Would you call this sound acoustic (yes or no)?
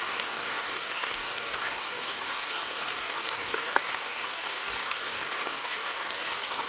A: no